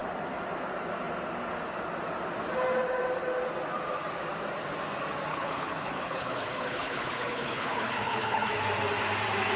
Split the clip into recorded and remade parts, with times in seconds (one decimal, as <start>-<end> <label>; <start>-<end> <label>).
0.0-5.3 recorded; 5.3-8.5 remade; 8.5-9.6 recorded